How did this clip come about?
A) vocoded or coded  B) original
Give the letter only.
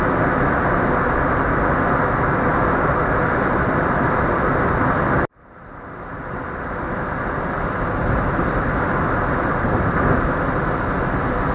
B